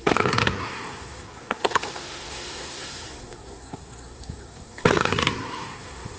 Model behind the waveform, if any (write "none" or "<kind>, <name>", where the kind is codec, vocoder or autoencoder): codec, SNAC